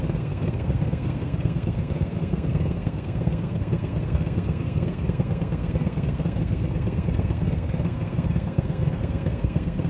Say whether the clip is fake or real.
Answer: fake